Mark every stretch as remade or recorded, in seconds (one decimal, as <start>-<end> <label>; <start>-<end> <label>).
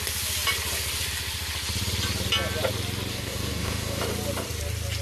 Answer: 0.0-3.1 recorded; 3.1-4.0 remade; 4.0-5.0 recorded